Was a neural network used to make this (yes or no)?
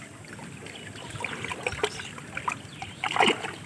no